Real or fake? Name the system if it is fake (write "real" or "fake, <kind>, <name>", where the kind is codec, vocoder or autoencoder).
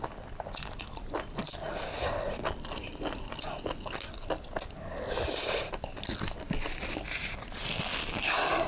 real